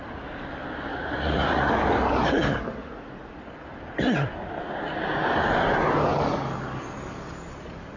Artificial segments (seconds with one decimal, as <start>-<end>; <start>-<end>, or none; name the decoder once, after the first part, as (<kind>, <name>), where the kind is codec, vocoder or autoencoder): 0.9-1.7 (vocoder, Vocos); 2.8-3.3